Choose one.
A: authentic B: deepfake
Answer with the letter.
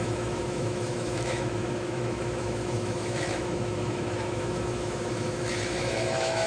B